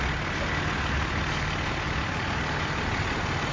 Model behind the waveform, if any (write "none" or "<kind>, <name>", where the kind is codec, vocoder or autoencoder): none